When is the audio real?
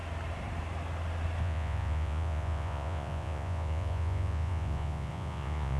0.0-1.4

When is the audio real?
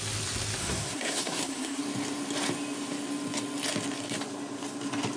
0.0-0.6; 1.8-5.2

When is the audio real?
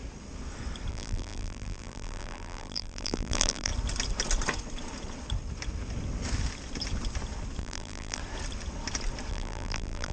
0.0-0.9; 3.7-7.6; 8.2-9.3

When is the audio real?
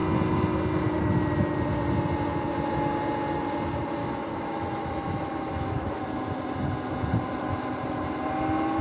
0.0-4.0; 6.0-8.8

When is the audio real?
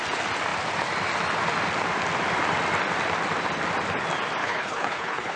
0.0-4.4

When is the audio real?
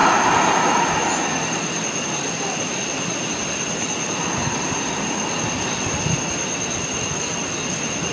0.0-8.1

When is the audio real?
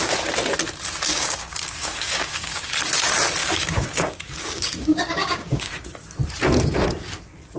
0.0-1.1; 2.7-3.4; 5.7-7.6